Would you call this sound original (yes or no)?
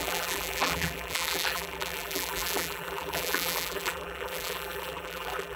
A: no